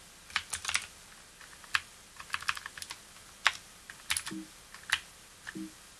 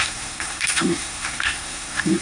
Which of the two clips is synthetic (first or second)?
second